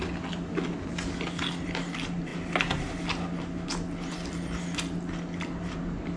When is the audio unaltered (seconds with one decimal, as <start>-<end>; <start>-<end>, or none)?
0.0-6.2